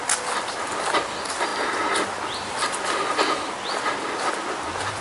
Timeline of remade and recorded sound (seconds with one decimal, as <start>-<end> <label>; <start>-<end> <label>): 0.0-5.0 recorded